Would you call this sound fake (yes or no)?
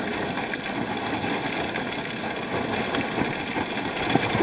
no